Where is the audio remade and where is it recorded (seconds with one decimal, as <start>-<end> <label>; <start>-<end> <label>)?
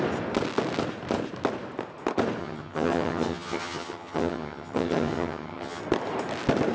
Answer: 0.0-2.4 recorded; 2.4-5.8 remade; 5.8-6.7 recorded